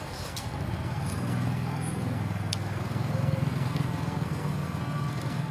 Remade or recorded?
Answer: remade